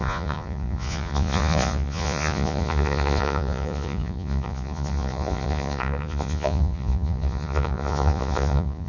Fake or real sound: fake